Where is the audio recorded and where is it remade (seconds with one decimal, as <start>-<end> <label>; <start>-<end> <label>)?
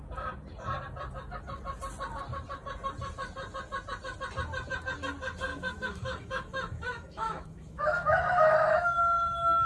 0.0-5.5 recorded; 5.5-9.7 remade